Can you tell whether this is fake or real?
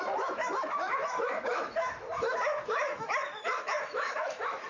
fake